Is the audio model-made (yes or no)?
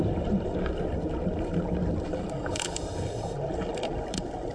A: no